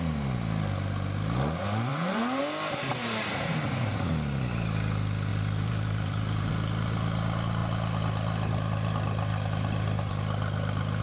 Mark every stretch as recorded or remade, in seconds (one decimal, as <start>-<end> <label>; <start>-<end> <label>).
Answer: 0.0-1.9 recorded; 1.9-2.4 remade; 2.4-2.9 recorded; 2.9-4.1 remade; 4.1-5.3 recorded; 5.3-6.5 remade; 6.5-11.0 recorded